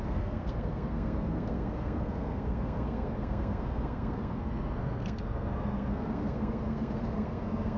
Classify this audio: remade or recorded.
remade